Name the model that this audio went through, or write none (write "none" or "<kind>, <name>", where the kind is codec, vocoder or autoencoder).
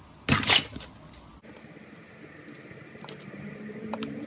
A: none